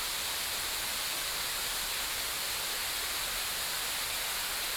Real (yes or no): yes